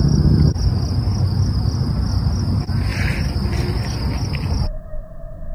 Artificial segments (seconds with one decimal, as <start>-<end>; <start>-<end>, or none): none